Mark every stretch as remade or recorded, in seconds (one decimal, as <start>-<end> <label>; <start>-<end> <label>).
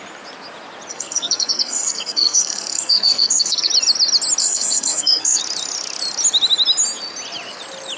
0.0-0.9 recorded; 0.9-3.7 remade; 3.7-4.4 recorded; 4.4-5.4 remade; 5.4-8.0 recorded